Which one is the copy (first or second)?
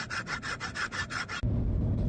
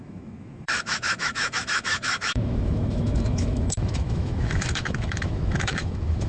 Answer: second